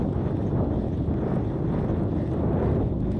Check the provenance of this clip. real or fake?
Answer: real